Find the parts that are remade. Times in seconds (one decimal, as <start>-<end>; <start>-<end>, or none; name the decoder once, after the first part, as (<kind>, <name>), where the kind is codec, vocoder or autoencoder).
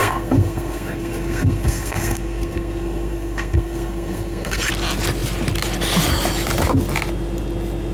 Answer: 0.0-4.7 (codec, SNAC)